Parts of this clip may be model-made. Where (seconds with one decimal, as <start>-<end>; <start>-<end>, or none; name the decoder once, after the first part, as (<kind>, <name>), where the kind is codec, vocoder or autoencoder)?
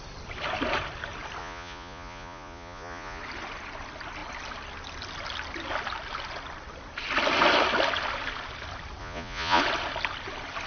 1.4-3.2 (vocoder, Vocos); 9.0-9.6